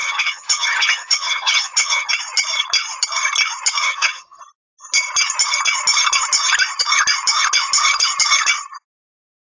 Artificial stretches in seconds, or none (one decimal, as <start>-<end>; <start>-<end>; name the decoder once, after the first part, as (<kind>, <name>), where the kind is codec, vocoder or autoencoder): 0.0-2.1 (vocoder, HiFi-GAN); 3.8-4.4